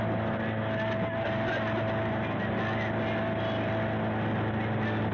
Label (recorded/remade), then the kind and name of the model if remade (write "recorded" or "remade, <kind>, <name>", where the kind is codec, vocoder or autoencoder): recorded